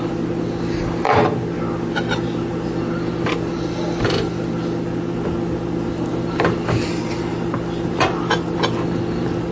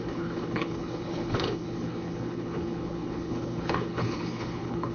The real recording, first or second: first